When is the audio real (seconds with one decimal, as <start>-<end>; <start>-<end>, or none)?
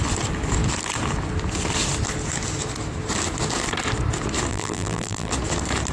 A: 0.0-4.5; 5.3-5.9